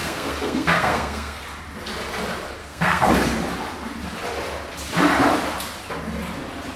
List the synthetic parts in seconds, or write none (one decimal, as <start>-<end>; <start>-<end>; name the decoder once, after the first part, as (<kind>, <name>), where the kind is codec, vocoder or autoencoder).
0.0-1.4 (codec, SNAC); 2.6-3.1